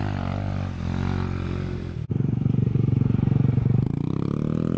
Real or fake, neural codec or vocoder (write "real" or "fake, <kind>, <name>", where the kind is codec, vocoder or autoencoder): real